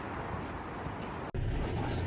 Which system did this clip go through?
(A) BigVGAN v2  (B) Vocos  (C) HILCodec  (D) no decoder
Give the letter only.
D